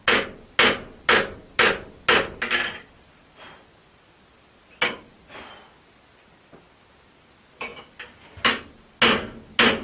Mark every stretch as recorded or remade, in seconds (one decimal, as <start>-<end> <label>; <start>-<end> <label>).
0.0-9.8 recorded